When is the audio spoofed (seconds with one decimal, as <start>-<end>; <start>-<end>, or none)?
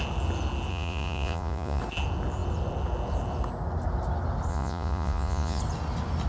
0.7-1.8; 4.5-5.6